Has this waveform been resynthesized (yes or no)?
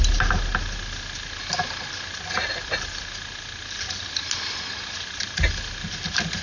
no